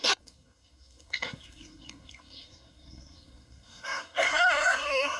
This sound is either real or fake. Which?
fake